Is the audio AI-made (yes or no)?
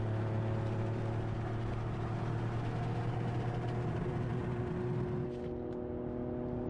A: no